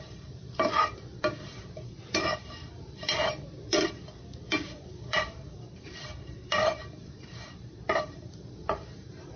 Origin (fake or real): fake